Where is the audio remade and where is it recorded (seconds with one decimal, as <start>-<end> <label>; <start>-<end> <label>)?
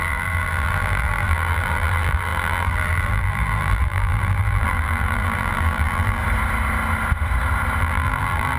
0.0-6.2 remade; 6.2-7.8 recorded; 7.8-8.6 remade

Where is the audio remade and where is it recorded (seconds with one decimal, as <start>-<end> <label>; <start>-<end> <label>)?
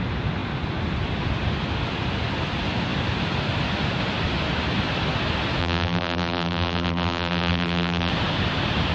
0.0-5.6 recorded; 5.6-8.1 remade; 8.1-8.9 recorded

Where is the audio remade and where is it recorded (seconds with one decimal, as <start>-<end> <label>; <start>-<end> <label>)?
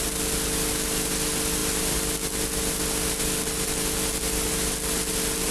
0.0-5.5 recorded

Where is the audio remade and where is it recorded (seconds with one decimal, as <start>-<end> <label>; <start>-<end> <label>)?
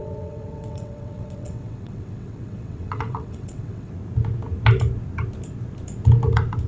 0.0-3.9 remade; 3.9-6.7 recorded